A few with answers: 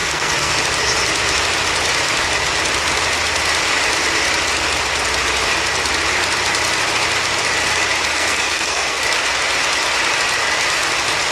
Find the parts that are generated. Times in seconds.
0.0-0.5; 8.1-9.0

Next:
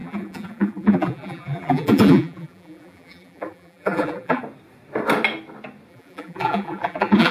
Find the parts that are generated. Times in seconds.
0.0-4.4; 5.9-7.3